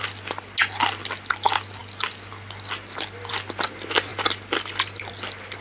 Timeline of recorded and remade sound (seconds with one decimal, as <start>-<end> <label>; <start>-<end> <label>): 0.0-5.6 recorded